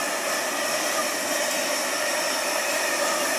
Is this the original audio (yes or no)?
yes